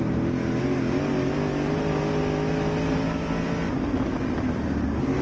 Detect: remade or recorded recorded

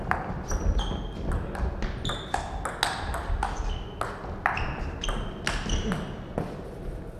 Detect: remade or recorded recorded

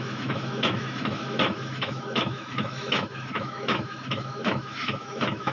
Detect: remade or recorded remade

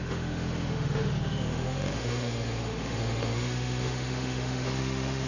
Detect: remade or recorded remade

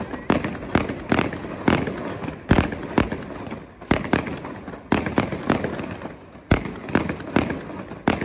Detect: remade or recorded recorded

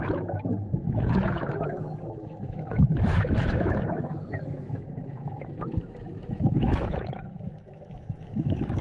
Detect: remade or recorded remade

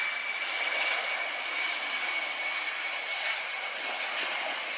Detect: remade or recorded recorded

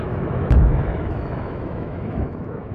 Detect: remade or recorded remade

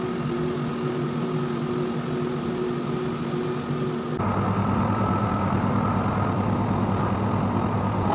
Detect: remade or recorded recorded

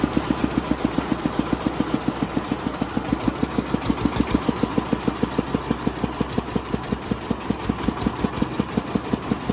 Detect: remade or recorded recorded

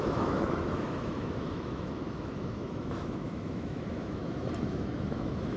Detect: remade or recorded remade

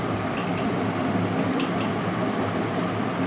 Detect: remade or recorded recorded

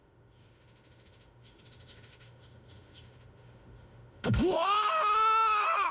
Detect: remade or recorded remade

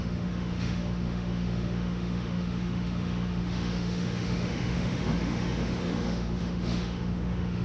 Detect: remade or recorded remade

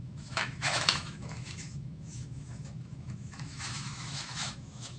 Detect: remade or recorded remade